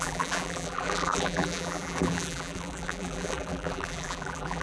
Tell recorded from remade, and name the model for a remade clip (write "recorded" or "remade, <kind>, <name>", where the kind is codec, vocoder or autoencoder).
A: remade, vocoder, BigVGAN v2